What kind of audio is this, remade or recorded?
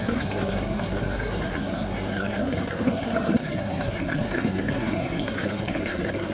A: remade